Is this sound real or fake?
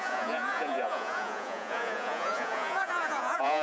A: fake